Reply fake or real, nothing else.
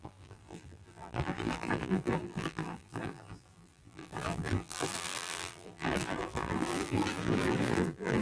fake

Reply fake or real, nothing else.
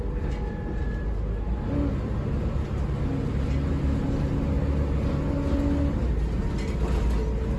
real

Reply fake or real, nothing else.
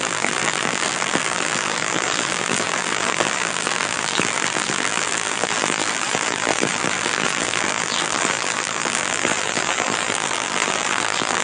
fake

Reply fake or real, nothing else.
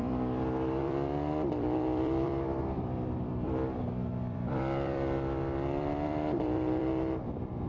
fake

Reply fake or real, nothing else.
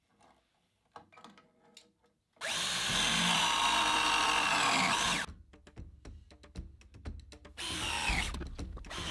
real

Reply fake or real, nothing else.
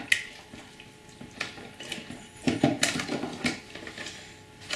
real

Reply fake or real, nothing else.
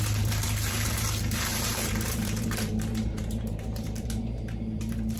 fake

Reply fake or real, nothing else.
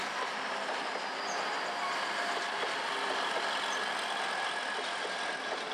real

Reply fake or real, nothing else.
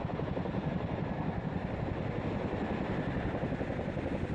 real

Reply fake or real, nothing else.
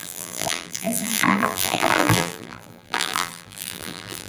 fake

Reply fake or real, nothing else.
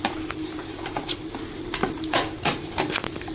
fake